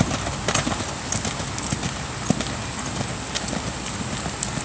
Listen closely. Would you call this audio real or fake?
real